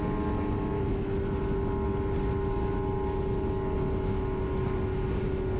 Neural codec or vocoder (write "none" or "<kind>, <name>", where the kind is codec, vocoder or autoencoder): none